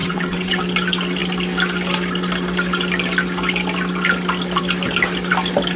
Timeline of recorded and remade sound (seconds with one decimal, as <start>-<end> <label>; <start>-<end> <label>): 0.0-0.6 remade; 0.6-5.8 recorded